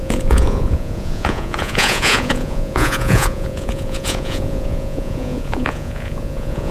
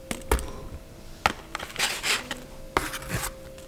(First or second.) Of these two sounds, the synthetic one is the first